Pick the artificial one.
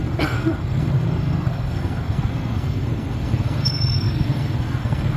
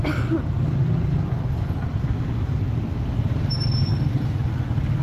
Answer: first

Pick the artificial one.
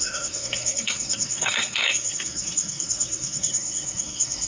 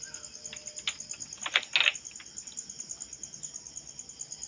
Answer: first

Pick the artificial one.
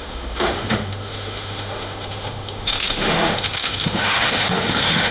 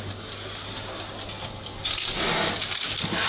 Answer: first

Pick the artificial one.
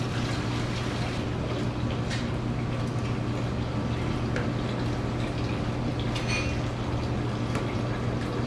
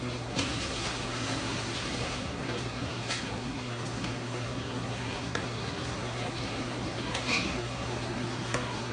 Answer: second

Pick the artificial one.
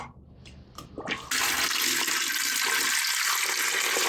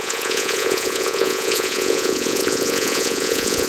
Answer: second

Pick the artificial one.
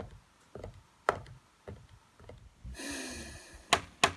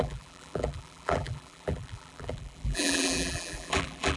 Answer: second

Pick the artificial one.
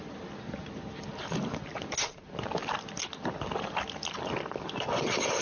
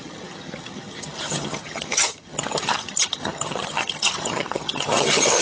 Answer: second